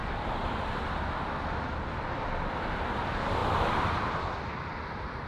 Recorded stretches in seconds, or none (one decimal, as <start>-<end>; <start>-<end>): 1.6-3.4; 3.9-5.3